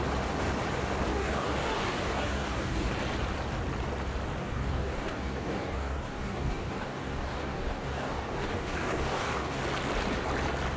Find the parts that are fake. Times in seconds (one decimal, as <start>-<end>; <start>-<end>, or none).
1.1-2.9; 4.4-9.6